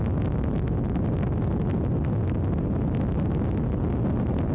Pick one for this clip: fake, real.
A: real